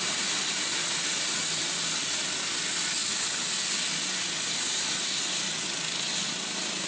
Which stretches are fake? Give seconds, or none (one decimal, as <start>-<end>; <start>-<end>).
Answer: none